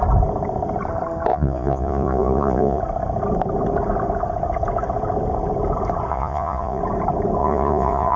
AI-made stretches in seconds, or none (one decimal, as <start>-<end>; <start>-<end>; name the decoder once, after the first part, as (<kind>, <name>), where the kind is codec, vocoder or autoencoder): 1.3-2.8 (vocoder, Vocos); 6.1-6.8; 7.4-8.2